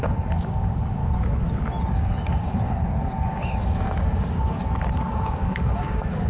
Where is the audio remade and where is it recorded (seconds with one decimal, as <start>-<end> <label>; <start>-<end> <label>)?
0.0-1.0 remade; 1.0-1.9 recorded; 1.9-4.6 remade; 4.6-5.1 recorded; 5.1-6.3 remade